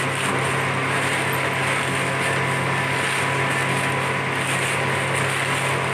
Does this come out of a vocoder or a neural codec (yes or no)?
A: no